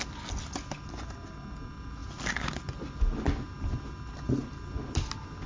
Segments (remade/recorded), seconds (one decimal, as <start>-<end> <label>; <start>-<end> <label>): 0.0-5.5 recorded